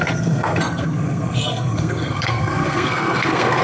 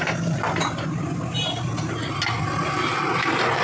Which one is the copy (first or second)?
first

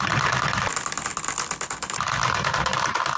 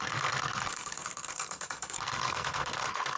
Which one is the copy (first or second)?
second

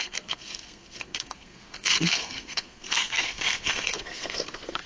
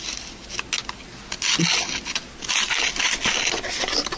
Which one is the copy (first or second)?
first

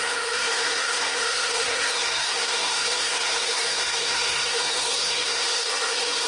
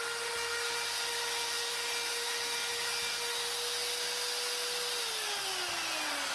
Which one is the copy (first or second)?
first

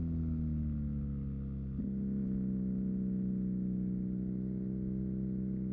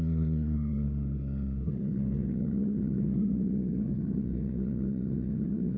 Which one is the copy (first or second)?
second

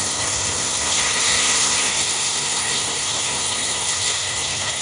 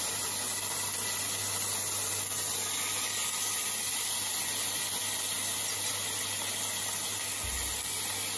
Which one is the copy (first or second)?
first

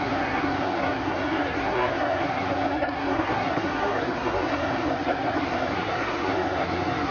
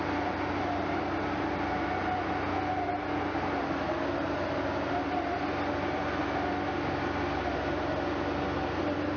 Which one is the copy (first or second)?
first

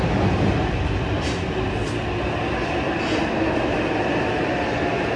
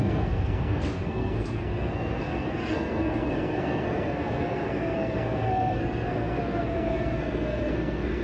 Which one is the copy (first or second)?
second